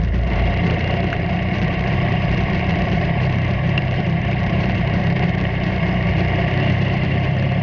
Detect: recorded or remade remade